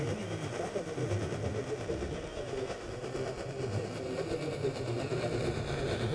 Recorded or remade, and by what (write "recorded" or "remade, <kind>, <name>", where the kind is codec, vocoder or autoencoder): recorded